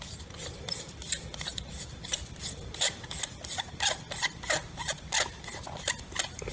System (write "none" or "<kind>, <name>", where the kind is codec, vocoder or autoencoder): none